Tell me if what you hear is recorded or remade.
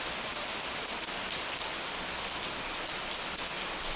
recorded